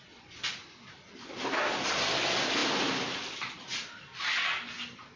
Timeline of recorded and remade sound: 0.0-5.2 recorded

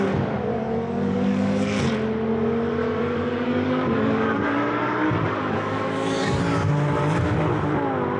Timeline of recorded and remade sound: 0.0-0.5 recorded; 0.5-1.8 remade; 1.8-2.8 recorded; 2.8-6.4 remade; 6.4-8.2 recorded

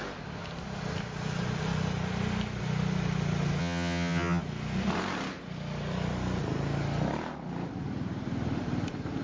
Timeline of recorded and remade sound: 0.0-3.6 recorded; 3.6-4.4 remade; 4.4-9.2 recorded